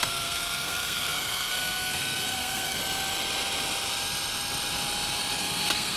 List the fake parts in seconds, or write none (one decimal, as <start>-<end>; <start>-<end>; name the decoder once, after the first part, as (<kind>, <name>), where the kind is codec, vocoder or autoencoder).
0.0-2.8 (codec, SNAC); 5.4-6.0